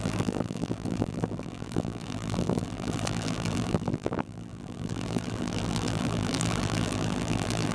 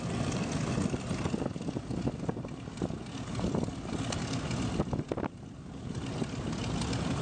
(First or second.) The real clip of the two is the second